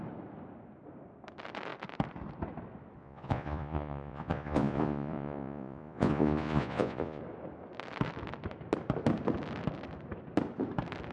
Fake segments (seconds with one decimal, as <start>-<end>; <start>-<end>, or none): 3.0-7.2